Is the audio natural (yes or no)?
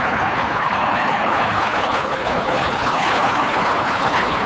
no